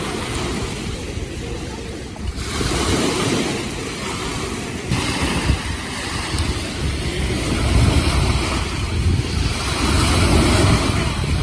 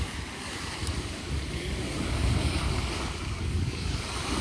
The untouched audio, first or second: first